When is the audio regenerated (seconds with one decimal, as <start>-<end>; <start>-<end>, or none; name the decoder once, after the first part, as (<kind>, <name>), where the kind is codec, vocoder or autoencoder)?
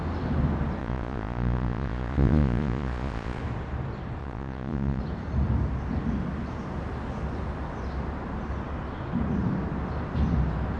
0.8-3.4 (vocoder, Vocos); 4.2-5.0